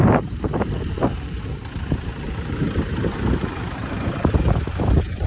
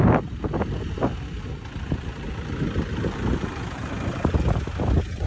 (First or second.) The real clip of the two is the second